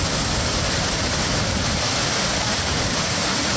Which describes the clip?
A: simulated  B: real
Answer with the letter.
B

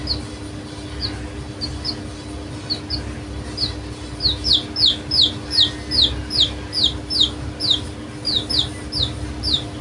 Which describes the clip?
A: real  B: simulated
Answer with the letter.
A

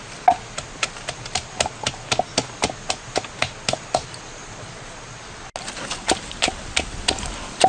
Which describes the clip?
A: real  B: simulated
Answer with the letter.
A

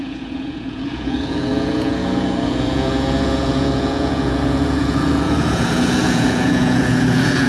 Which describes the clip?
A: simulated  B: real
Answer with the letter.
A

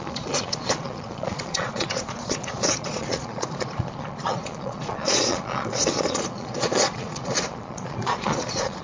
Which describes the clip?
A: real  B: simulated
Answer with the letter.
B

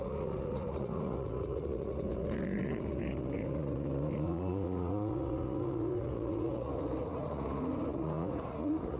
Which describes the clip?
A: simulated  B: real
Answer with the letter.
A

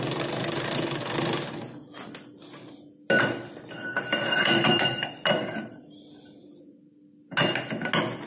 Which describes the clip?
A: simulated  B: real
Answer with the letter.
B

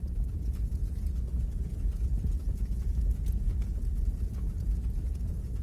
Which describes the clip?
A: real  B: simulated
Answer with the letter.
B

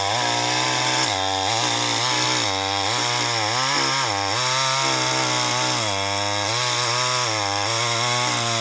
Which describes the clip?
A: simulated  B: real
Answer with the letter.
B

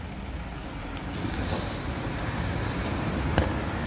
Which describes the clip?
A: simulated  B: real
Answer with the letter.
B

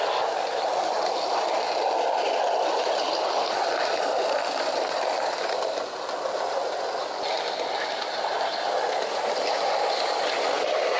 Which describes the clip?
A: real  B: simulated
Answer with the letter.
A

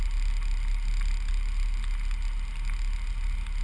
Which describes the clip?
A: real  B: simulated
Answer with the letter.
A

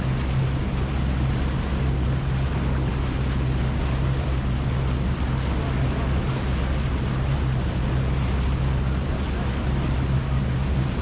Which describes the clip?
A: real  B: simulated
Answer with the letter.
A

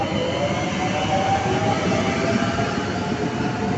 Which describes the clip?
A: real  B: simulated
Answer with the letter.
A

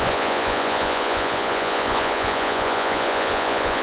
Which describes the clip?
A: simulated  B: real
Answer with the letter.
A